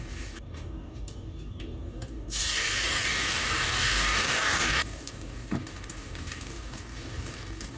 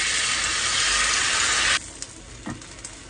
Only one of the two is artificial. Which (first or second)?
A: first